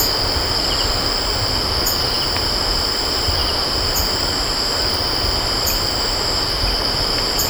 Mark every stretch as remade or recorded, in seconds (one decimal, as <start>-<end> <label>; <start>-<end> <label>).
0.0-7.5 recorded